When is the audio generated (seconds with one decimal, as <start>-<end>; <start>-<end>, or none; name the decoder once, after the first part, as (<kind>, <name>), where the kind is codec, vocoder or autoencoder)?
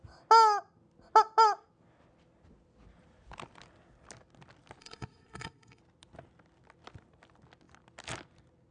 4.8-5.8 (codec, SNAC)